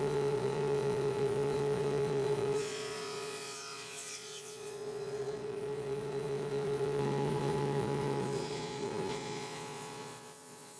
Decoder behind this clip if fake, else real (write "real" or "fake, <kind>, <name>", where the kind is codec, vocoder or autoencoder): fake, vocoder, Vocos